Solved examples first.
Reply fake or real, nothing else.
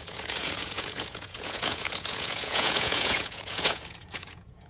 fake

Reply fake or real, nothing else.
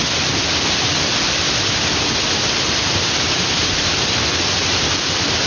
real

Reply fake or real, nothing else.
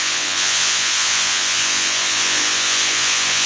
fake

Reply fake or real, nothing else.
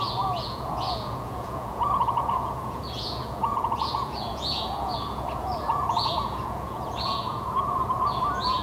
fake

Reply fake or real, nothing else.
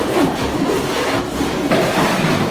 real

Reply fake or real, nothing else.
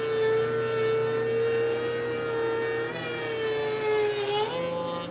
real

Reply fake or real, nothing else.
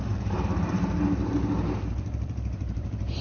fake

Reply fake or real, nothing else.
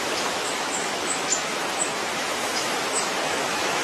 fake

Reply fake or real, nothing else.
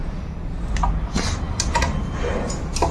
real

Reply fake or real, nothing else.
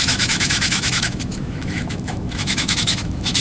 fake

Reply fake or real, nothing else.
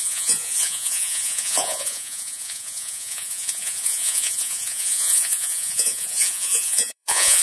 fake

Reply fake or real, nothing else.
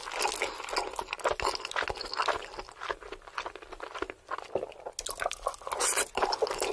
real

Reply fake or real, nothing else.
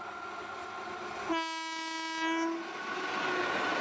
real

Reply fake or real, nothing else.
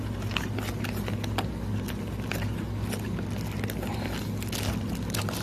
real